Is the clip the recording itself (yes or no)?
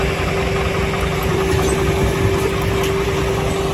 yes